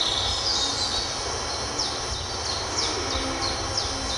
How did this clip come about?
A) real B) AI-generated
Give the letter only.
A